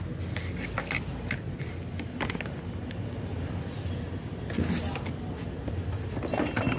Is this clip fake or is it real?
real